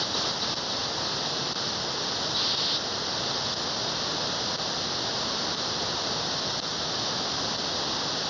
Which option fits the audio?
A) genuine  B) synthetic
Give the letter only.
A